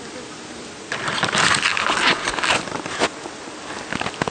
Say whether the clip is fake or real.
real